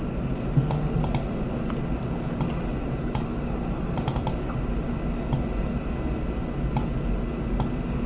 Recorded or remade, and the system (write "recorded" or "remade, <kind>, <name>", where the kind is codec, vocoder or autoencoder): recorded